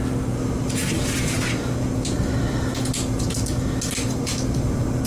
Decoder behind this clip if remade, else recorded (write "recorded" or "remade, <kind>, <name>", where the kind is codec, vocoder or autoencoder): recorded